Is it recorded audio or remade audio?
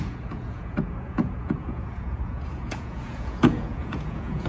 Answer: remade